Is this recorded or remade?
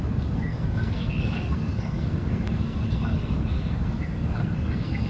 remade